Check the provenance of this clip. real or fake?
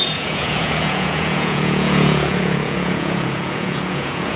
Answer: fake